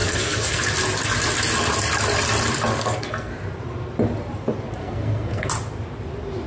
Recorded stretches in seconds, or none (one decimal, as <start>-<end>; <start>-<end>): 0.6-2.7; 3.3-4.8; 5.5-6.5